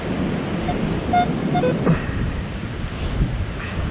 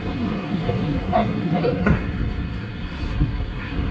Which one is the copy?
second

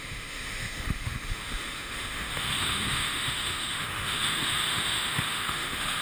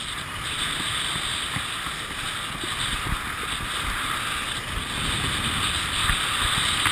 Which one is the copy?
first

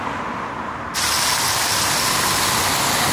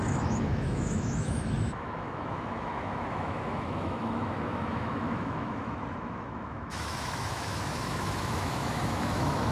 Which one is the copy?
second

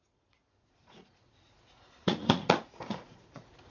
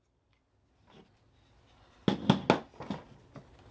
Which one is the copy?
first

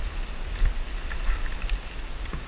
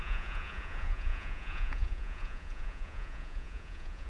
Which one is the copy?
second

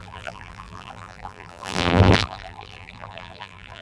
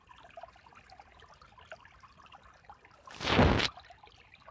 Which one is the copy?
first